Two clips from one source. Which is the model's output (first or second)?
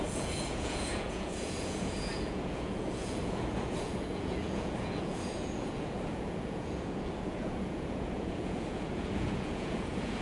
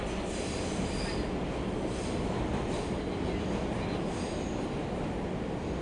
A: first